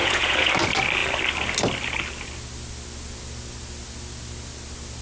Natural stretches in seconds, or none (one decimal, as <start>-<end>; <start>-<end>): 0.5-5.0